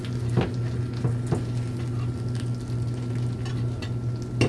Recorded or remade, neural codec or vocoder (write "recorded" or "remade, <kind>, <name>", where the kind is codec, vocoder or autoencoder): recorded